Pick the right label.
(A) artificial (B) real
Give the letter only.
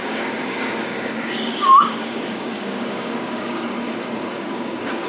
A